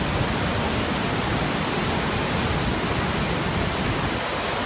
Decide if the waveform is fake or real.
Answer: real